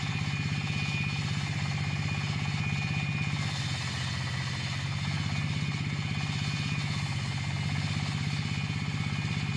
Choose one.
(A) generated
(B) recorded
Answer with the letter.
B